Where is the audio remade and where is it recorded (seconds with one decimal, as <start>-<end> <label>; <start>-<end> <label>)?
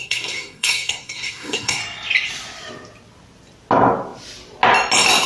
0.0-1.8 remade; 1.8-5.3 recorded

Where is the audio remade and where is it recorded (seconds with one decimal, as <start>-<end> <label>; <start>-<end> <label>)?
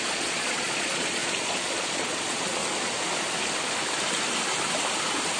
0.0-2.6 remade; 2.6-5.4 recorded